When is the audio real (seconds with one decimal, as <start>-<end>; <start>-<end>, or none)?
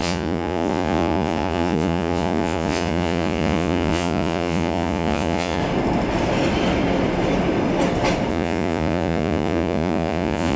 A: 5.6-8.3